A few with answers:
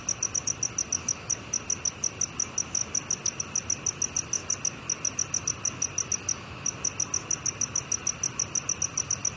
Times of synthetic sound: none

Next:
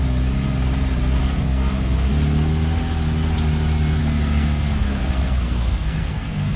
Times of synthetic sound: 1.2-2.1 (codec, SNAC); 4.0-6.6

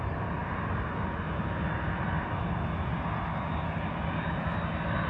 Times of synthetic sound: none

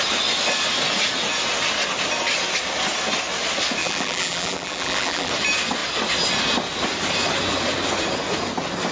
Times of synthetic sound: 3.8-5.3 (vocoder, BigVGAN v2)

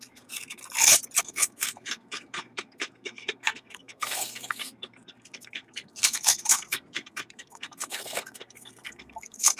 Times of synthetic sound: 0.0-0.6 (codec, SNAC); 1.2-9.6

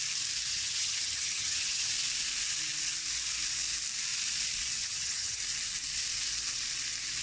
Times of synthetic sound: 0.5-1.9 (vocoder, HiFi-GAN); 4.8-5.4

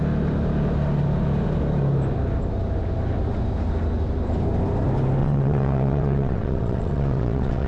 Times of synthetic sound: 5.2-7.7 (vocoder, WaveNeXt)